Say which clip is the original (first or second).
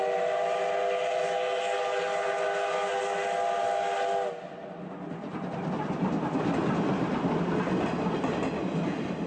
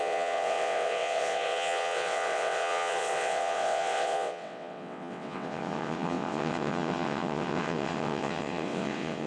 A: first